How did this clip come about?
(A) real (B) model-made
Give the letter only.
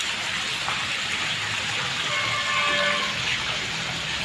A